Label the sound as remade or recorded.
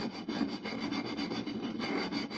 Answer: recorded